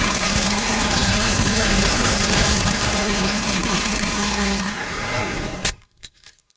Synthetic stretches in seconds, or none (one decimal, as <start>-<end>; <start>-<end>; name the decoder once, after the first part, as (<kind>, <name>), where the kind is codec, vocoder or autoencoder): 0.0-6.6 (codec, SNAC)